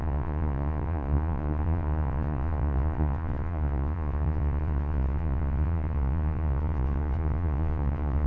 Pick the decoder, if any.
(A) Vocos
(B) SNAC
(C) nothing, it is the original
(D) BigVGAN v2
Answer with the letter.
A